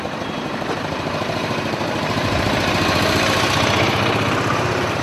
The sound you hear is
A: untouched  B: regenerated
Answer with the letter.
B